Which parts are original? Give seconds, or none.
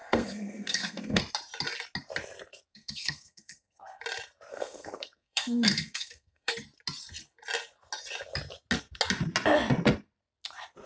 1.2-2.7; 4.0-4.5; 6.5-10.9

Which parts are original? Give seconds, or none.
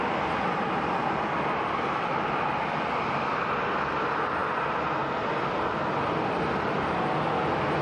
0.0-7.8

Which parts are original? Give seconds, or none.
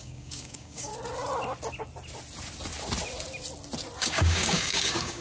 0.9-4.0